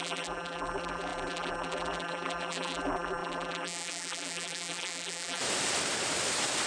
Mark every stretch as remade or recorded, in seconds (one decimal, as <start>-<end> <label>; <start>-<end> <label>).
0.0-5.4 remade; 5.4-6.7 recorded